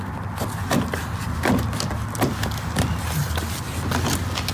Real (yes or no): yes